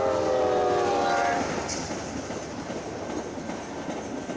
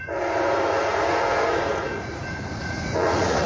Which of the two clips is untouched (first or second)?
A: first